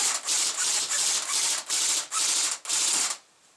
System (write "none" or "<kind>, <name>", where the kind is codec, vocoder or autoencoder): none